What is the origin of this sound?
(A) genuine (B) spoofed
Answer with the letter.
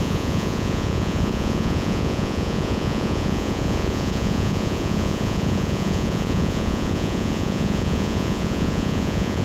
B